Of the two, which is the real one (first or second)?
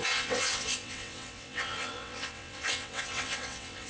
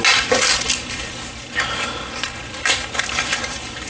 second